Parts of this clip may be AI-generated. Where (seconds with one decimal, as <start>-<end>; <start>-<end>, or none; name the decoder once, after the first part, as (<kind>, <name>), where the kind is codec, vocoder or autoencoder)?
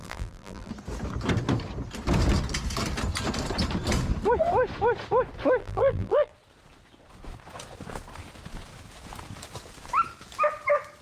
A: 0.0-0.7 (vocoder, BigVGAN v2); 5.6-6.3